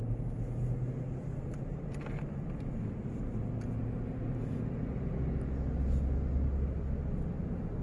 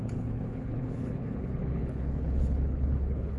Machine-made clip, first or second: second